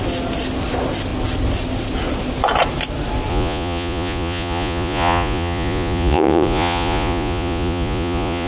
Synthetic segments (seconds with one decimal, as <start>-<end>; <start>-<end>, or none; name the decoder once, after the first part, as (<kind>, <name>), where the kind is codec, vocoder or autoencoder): 3.3-8.5 (vocoder, Vocos)